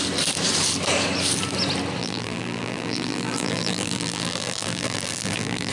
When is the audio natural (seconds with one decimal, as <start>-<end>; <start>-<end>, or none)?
0.0-2.0

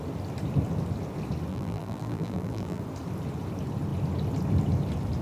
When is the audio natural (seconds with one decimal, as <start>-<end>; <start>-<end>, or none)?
0.0-1.5; 2.8-5.2